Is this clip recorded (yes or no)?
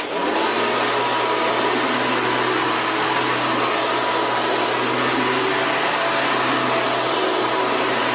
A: yes